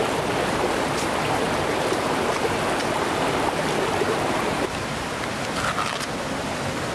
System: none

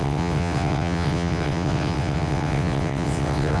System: vocoder, WaveNeXt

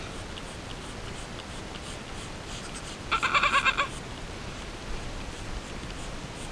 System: none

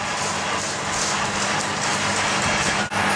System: none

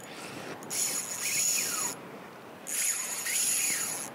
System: none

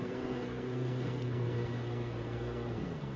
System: codec, SNAC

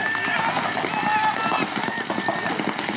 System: none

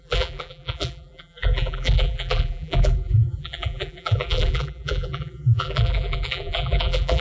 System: vocoder, BigVGAN v2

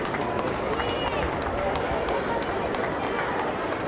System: none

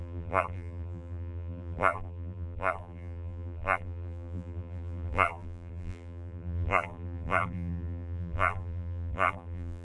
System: vocoder, BigVGAN v2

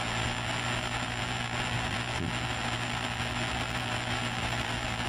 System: vocoder, BigVGAN v2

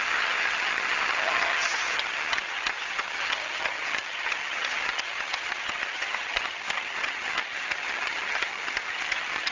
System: vocoder, HiFi-GAN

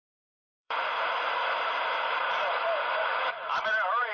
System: vocoder, BigVGAN v2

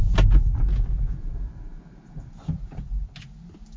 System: none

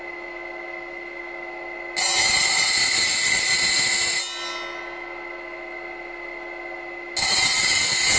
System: none